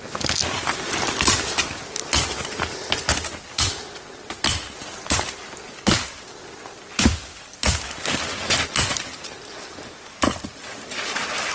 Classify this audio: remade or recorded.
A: recorded